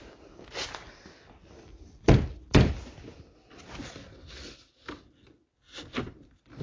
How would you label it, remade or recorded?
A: recorded